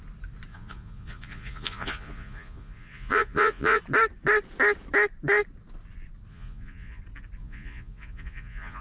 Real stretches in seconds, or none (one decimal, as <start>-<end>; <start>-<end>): 0.0-0.5; 3.8-6.3; 7.0-7.4